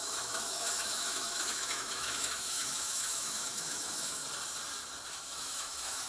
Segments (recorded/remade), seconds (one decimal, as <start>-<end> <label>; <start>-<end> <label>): 0.0-4.2 remade; 4.2-5.1 recorded; 5.1-6.1 remade